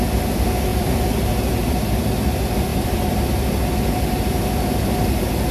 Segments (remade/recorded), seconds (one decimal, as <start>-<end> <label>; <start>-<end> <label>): 0.0-0.7 recorded; 0.7-1.3 remade; 1.3-2.7 recorded; 2.7-3.4 remade; 3.4-5.5 recorded